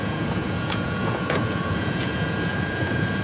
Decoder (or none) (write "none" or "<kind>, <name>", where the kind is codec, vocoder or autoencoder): vocoder, Vocos